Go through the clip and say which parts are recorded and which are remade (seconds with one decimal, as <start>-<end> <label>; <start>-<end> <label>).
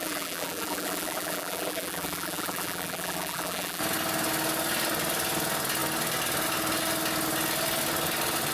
0.0-3.8 remade; 3.8-8.5 recorded